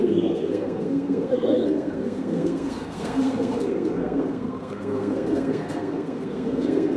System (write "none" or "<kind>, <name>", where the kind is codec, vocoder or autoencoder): codec, SNAC